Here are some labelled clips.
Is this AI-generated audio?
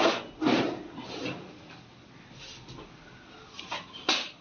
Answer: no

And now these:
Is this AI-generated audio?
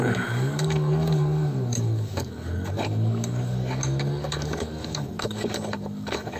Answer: yes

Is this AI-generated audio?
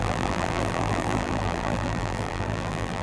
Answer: yes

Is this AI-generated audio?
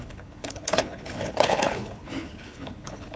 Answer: yes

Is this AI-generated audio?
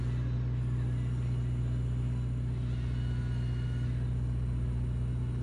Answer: no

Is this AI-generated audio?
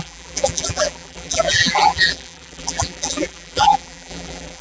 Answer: yes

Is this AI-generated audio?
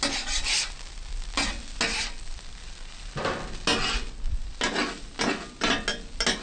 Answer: no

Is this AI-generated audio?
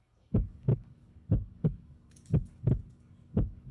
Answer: yes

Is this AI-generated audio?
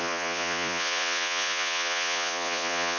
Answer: yes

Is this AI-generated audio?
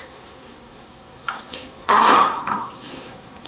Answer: yes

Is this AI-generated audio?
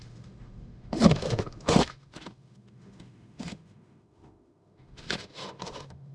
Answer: yes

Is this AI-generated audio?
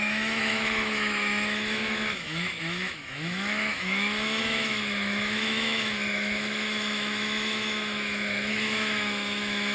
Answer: yes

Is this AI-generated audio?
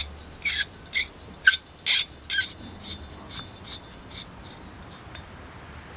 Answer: no